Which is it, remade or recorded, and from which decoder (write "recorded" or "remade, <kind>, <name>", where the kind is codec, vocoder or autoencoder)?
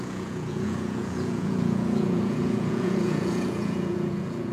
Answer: remade, vocoder, Vocos